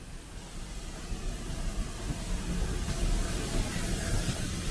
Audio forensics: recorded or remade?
recorded